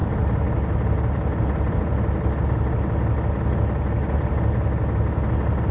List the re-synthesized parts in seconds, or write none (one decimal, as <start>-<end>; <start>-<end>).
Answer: 0.0-1.8